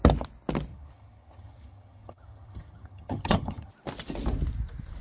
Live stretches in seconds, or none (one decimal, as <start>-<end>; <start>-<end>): 0.0-0.7; 3.7-5.0